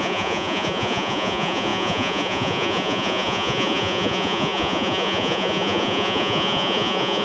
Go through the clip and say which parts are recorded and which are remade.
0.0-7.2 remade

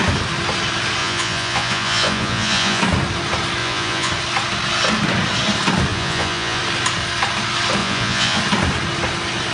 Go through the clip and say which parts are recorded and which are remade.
0.0-1.0 recorded; 1.0-2.8 remade; 2.8-3.6 recorded; 3.6-4.1 remade; 4.1-5.9 recorded; 5.9-6.6 remade; 6.6-7.8 recorded; 7.8-8.4 remade; 8.4-9.5 recorded

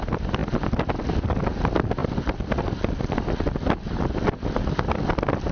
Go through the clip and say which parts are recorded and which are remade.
0.0-2.0 recorded; 2.0-3.2 remade; 3.2-5.5 recorded

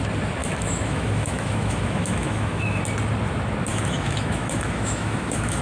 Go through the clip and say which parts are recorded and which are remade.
0.0-0.4 recorded; 0.4-2.8 remade; 2.8-3.7 recorded; 3.7-5.6 remade

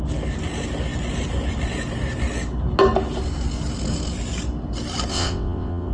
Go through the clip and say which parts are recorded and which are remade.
0.0-5.1 recorded; 5.1-5.9 remade

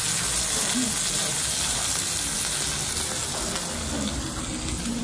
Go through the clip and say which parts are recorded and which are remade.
0.0-5.0 recorded